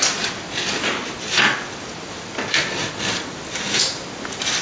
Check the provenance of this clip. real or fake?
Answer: real